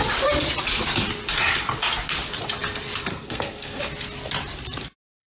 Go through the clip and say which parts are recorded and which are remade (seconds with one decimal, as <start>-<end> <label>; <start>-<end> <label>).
0.0-3.1 recorded; 3.1-3.8 remade; 3.8-5.3 recorded